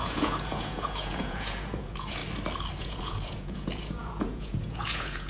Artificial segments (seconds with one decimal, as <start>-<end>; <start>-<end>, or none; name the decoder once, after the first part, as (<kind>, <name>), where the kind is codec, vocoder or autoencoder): 0.0-2.2 (vocoder, Vocos); 2.8-5.3